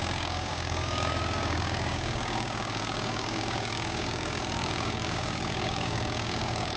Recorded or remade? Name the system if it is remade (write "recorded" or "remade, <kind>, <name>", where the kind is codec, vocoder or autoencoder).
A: remade, codec, DAC